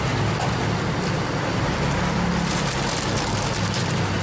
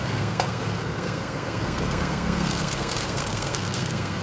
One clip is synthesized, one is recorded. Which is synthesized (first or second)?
second